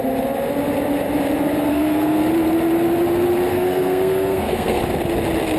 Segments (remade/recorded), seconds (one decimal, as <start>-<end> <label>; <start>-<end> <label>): 0.0-1.7 recorded; 1.7-2.2 remade; 2.2-3.5 recorded; 3.5-4.8 remade; 4.8-5.6 recorded